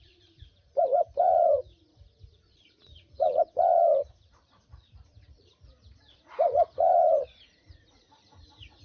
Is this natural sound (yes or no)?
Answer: no